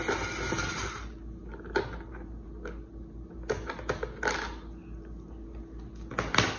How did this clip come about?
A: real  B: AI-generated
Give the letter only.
A